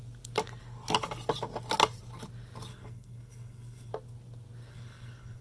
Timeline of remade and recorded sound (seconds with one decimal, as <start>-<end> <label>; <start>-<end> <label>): 0.0-2.7 recorded; 2.7-3.9 remade; 3.9-4.7 recorded; 4.7-5.4 remade